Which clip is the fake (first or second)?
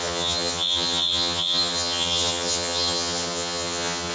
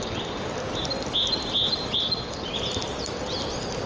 first